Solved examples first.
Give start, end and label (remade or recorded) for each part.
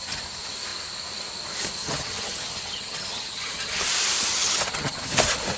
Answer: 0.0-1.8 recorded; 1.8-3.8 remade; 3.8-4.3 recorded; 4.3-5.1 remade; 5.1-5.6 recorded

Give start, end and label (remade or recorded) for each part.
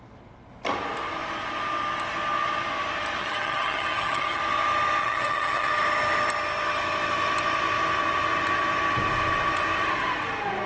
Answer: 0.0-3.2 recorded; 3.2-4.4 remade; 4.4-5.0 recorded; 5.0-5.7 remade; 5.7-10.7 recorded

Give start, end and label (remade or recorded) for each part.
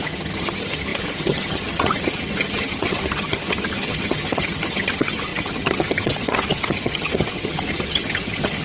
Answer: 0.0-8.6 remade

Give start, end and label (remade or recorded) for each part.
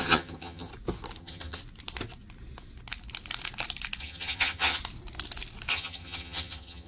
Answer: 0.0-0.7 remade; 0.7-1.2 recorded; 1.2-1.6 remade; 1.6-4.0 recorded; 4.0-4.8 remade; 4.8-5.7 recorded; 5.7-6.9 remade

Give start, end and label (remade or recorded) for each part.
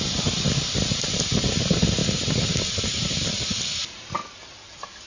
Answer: 0.0-5.1 recorded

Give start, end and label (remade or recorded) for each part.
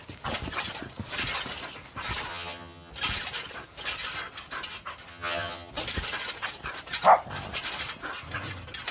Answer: 0.0-2.3 recorded; 2.3-2.9 remade; 2.9-5.1 recorded; 5.1-5.7 remade; 5.7-8.9 recorded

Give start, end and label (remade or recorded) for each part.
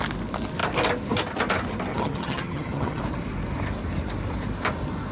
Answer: 0.0-1.9 recorded; 1.9-3.0 remade; 3.0-5.1 recorded